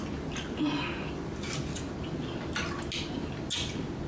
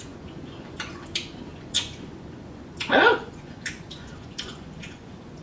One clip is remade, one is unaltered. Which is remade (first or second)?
second